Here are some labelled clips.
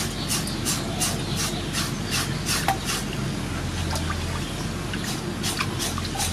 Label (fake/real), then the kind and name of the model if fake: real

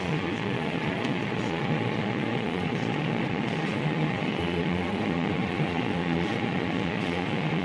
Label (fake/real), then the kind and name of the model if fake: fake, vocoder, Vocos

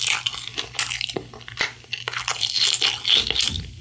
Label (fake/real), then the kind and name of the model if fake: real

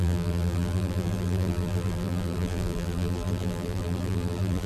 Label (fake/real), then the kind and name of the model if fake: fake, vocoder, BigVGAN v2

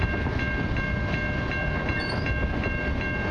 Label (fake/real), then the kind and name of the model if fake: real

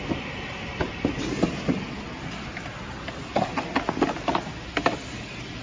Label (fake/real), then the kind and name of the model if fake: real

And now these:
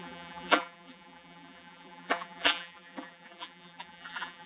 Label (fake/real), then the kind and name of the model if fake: fake, vocoder, BigVGAN v2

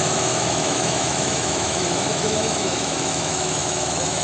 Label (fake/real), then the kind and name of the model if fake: fake, autoencoder, DAC-VAE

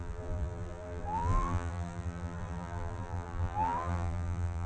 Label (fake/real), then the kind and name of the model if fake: fake, vocoder, BigVGAN v2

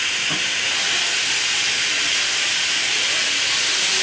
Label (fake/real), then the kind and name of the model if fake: real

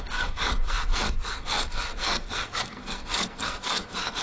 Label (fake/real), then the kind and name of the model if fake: fake, codec, SNAC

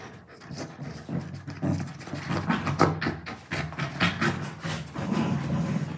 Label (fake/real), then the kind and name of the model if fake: real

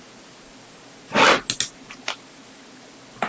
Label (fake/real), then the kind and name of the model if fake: real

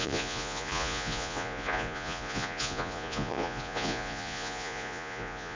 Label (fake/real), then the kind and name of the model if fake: fake, vocoder, Vocos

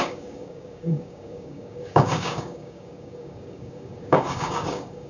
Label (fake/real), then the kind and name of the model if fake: fake, codec, DAC